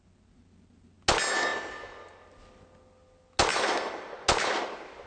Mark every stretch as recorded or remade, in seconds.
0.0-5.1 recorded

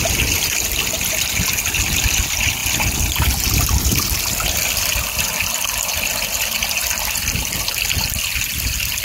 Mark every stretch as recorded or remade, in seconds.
0.0-9.0 recorded

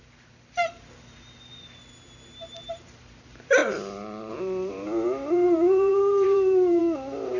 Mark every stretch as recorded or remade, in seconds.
0.0-3.6 remade; 3.6-4.3 recorded; 4.3-7.4 remade